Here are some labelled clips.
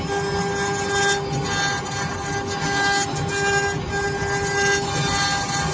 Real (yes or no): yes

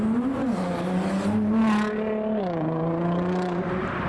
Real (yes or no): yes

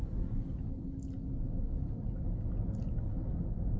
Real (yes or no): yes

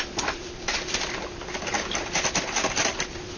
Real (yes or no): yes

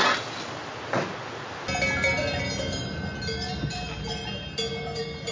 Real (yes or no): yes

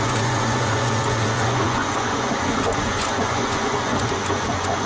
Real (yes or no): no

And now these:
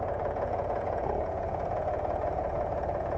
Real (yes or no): no